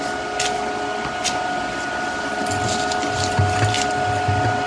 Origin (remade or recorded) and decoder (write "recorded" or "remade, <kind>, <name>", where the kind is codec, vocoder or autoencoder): recorded